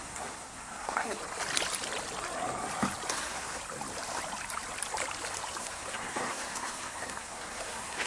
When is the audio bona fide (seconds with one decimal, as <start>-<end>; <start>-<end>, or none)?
1.2-3.1; 3.6-5.6

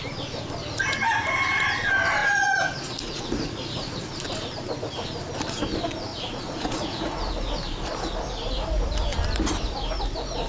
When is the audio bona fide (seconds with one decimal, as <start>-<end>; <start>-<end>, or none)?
0.0-2.2; 4.0-6.1; 7.2-10.5

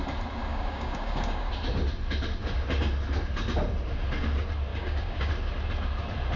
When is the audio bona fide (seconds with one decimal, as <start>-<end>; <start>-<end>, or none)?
0.0-0.5; 1.5-4.7; 5.3-6.4

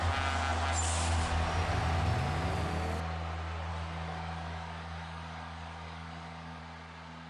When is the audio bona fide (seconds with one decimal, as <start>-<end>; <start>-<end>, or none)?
0.0-3.7; 6.6-7.3

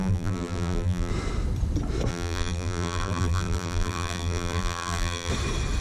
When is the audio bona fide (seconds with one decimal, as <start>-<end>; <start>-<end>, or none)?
1.1-2.1; 5.3-5.8

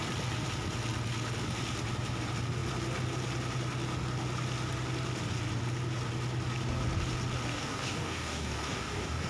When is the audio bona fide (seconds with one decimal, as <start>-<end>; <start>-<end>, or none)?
0.0-7.5